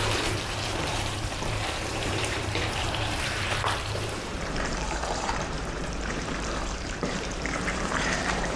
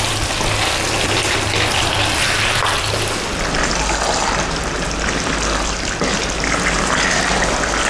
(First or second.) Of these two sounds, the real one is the second